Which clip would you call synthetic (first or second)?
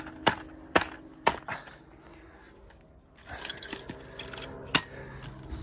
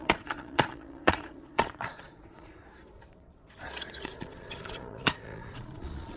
second